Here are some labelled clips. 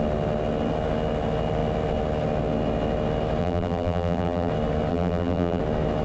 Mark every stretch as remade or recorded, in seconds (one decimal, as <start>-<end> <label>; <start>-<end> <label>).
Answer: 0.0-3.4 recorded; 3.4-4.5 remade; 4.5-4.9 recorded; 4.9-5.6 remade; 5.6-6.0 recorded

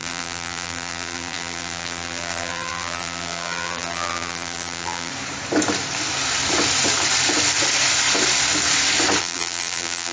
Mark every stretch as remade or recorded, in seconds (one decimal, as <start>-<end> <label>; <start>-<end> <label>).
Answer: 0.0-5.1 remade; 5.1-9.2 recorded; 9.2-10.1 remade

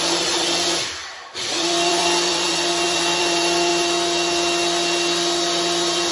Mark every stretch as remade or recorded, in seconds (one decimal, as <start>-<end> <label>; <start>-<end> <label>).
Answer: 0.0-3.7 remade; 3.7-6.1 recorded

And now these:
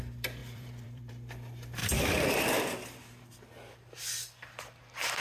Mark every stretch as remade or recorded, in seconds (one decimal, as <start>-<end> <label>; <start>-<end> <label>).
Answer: 0.0-0.4 recorded; 0.4-1.1 remade; 1.1-1.8 recorded; 1.8-3.4 remade; 3.4-5.2 recorded

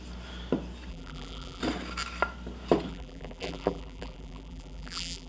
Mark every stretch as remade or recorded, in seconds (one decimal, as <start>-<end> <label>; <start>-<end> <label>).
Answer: 0.0-0.9 recorded; 0.9-1.6 remade; 1.6-2.9 recorded; 2.9-5.3 remade

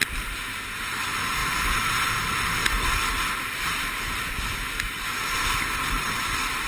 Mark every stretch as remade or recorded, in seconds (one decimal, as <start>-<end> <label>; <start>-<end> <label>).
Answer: 0.0-0.8 recorded; 0.8-2.6 remade; 2.6-5.6 recorded; 5.6-6.7 remade

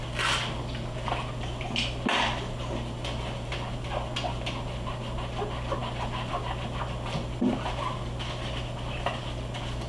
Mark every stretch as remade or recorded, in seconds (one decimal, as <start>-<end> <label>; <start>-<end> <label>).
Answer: 0.0-9.9 recorded

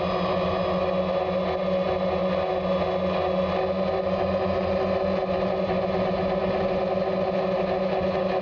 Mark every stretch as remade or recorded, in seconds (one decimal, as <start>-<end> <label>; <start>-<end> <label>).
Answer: 0.0-8.4 recorded